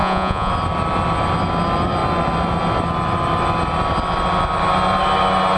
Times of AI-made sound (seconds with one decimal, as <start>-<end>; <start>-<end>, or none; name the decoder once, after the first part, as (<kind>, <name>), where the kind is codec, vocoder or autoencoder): 0.0-0.5 (vocoder, Vocos)